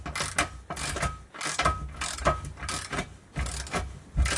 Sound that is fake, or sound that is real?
real